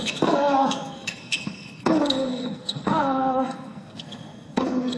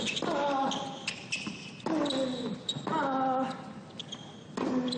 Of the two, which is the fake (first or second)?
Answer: first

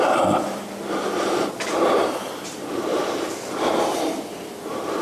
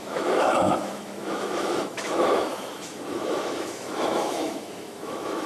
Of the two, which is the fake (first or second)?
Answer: second